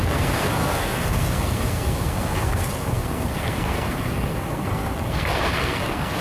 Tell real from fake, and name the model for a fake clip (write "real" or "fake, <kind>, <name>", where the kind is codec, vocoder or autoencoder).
fake, codec, SNAC